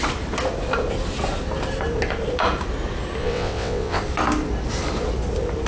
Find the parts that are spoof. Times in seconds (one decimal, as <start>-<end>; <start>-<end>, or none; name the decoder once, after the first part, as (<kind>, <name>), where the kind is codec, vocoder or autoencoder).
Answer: 3.2-4.0 (vocoder, WaveNeXt)

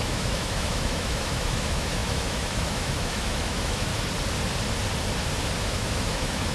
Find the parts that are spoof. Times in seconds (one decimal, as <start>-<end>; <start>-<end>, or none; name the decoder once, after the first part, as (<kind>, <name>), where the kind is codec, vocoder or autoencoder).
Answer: 0.0-3.9 (autoencoder, DAC-VAE); 5.6-6.5

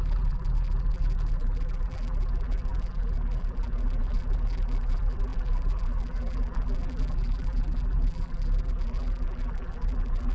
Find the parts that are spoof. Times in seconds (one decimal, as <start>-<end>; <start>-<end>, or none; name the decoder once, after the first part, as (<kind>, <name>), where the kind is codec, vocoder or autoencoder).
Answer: 0.0-10.3 (vocoder, BigVGAN v2)

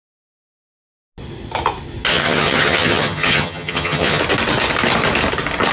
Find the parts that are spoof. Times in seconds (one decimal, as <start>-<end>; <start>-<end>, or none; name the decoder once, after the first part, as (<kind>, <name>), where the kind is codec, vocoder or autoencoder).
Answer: 2.1-4.2 (vocoder, HiFi-GAN)

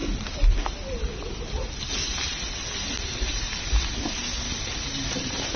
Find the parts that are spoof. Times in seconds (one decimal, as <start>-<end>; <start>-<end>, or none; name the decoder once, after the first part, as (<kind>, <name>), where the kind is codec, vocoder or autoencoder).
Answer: none

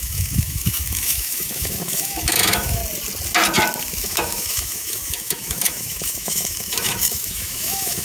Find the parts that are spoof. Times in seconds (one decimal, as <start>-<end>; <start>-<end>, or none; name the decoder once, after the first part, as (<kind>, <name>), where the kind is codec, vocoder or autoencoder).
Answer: 0.0-2.8 (autoencoder, DAC-VAE); 3.8-8.0

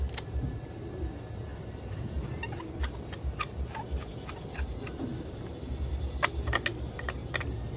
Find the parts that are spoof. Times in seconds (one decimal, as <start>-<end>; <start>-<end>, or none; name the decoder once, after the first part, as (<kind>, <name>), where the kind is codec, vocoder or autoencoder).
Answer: none